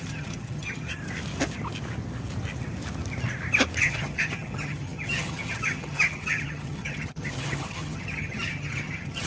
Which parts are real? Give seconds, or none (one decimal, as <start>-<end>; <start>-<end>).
1.0-3.8